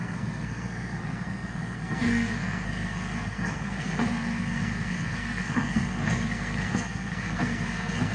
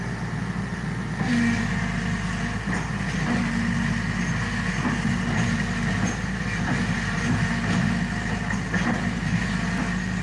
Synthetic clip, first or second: first